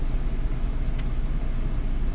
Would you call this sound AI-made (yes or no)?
no